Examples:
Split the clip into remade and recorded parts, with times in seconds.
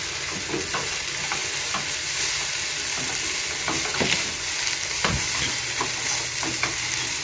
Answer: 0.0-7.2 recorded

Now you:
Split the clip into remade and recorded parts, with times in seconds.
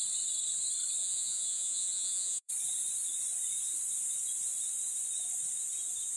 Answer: 0.0-1.0 recorded; 1.0-2.5 remade; 2.5-6.2 recorded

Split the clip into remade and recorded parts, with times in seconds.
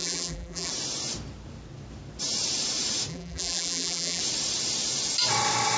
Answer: 0.0-0.7 remade; 0.7-3.1 recorded; 3.1-4.2 remade; 4.2-5.8 recorded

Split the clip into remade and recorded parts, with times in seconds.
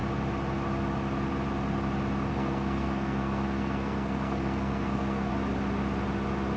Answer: 0.0-2.3 recorded; 2.3-5.3 remade; 5.3-6.6 recorded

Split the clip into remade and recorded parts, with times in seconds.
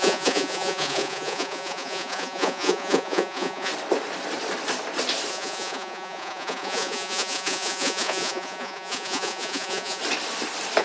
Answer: 0.0-3.7 remade; 3.7-5.3 recorded; 5.3-10.0 remade; 10.0-10.8 recorded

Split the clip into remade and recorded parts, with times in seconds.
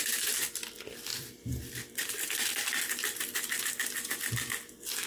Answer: 0.0-1.1 recorded; 1.1-4.2 remade; 4.2-5.1 recorded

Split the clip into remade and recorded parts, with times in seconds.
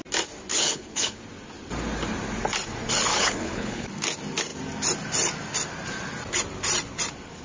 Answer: 0.0-0.5 recorded; 0.5-1.2 remade; 1.2-3.1 recorded; 3.1-3.9 remade; 3.9-7.4 recorded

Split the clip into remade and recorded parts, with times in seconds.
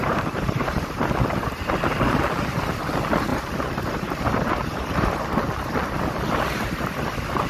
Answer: 0.0-1.0 remade; 1.0-3.3 recorded; 3.3-5.2 remade; 5.2-7.5 recorded